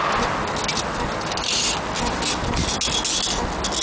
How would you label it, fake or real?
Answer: real